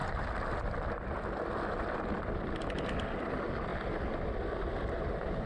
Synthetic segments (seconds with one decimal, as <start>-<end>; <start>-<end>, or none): none